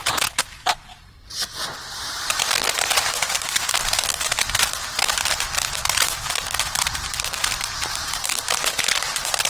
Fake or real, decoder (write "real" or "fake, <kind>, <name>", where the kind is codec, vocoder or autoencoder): fake, vocoder, BigVGAN v2